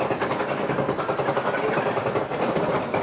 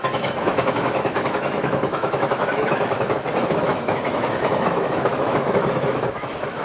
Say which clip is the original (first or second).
first